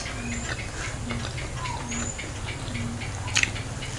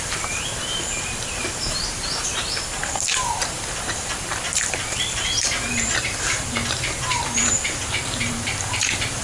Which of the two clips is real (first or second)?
first